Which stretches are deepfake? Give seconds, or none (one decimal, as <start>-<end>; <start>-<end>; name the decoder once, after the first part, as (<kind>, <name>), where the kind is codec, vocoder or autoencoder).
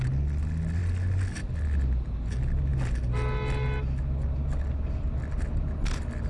none